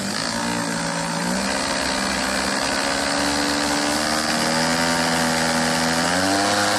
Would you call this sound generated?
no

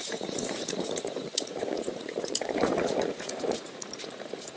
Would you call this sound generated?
yes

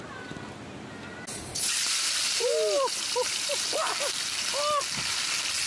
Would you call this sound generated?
no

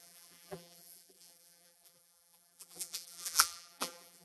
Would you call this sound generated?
yes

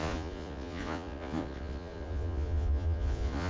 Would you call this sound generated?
yes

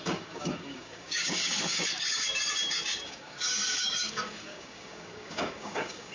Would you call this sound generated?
yes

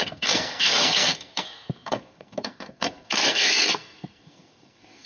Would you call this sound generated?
yes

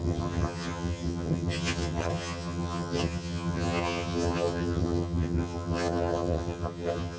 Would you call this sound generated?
yes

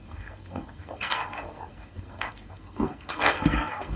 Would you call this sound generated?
yes